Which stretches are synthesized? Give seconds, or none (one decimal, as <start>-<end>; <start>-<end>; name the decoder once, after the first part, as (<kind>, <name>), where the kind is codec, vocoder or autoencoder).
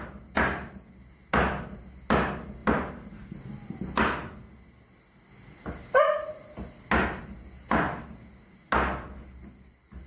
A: none